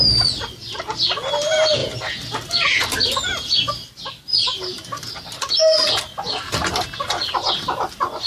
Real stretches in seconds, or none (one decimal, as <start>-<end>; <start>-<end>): 0.0-8.3